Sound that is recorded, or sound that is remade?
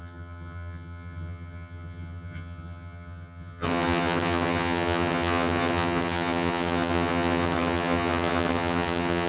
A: remade